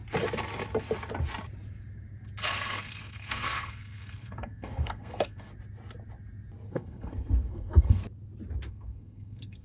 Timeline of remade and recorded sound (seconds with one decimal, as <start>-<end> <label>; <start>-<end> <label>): 0.0-2.4 recorded; 2.4-5.5 remade; 5.5-6.7 recorded; 6.7-8.0 remade; 8.0-8.7 recorded; 8.7-9.6 remade